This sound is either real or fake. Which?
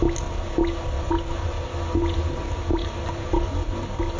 real